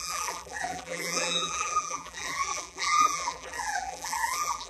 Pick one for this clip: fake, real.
fake